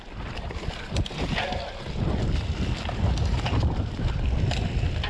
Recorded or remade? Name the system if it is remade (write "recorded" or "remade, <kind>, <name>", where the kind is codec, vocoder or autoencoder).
recorded